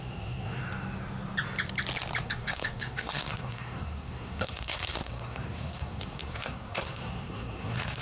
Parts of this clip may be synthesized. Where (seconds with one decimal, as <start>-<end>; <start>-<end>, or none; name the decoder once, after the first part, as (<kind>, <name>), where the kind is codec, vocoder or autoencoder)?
0.0-0.6 (codec, SNAC); 2.2-8.0

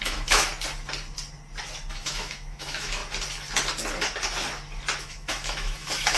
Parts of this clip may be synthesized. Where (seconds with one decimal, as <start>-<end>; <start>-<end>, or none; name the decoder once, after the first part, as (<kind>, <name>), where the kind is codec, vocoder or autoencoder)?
0.0-0.5 (autoencoder, DAC-VAE); 1.9-3.0; 5.0-6.2

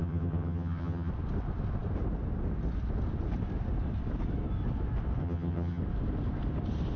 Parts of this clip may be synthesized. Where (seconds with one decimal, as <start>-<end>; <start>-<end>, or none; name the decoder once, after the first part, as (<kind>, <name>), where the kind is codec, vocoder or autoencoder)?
0.0-1.1 (vocoder, HiFi-GAN); 5.2-5.8

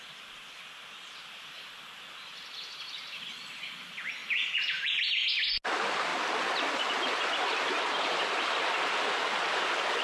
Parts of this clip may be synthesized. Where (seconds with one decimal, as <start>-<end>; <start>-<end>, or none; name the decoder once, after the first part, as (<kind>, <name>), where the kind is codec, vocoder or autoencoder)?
4.2-5.0 (vocoder, BigVGAN v2)

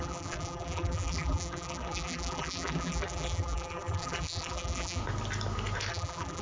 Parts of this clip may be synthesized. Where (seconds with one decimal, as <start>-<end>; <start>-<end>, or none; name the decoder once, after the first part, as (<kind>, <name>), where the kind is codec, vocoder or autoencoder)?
0.0-5.0 (vocoder, BigVGAN v2); 5.9-6.4

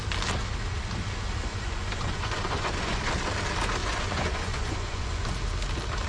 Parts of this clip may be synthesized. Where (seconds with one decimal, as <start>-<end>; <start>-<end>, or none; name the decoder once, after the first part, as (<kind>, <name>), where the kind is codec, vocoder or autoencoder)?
1.5-3.1 (vocoder, Vocos); 3.8-5.3